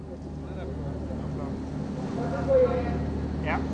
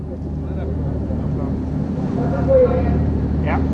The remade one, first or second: second